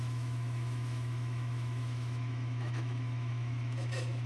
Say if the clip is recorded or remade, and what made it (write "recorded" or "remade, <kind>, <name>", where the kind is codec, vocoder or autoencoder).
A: remade, autoencoder, DAC-VAE